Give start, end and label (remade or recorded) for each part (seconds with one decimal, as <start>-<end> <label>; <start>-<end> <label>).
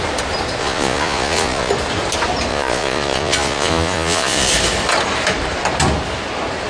0.0-0.6 recorded; 0.6-1.7 remade; 1.7-2.5 recorded; 2.5-4.5 remade; 4.5-6.7 recorded